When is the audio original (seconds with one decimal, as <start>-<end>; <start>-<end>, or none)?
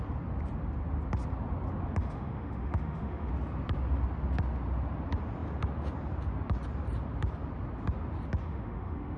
0.0-2.0; 3.3-8.4